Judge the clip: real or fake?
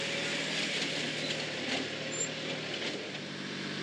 real